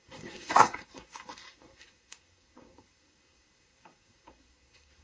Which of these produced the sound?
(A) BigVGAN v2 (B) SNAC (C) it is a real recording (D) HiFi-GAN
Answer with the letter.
B